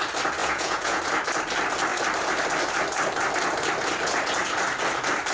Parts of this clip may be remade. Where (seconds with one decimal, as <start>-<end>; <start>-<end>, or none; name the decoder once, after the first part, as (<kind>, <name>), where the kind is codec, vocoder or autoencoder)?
0.4-1.0 (vocoder, Vocos)